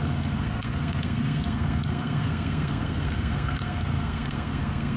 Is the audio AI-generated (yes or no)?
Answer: yes